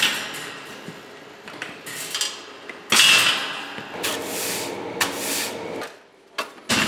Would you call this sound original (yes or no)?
yes